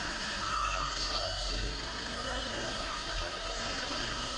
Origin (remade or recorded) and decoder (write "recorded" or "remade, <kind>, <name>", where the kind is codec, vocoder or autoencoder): remade, codec, SNAC